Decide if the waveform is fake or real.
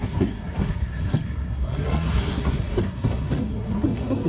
fake